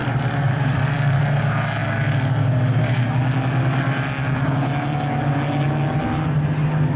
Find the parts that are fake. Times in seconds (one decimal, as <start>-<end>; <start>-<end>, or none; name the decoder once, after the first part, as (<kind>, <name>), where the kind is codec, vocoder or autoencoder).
0.0-1.2 (vocoder, BigVGAN v2)